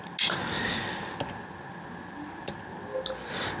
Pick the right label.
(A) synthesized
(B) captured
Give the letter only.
B